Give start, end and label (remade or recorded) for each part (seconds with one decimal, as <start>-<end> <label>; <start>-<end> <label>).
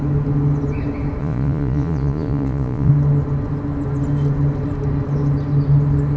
0.0-1.2 recorded; 1.2-2.9 remade; 2.9-6.2 recorded